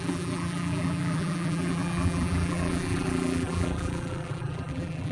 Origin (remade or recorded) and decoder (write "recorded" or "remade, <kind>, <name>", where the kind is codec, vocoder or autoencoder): remade, vocoder, BigVGAN v2